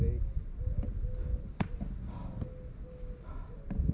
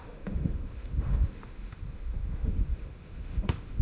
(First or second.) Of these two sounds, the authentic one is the first